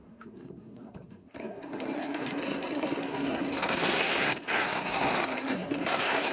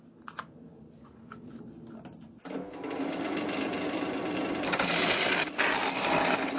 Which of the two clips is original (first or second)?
second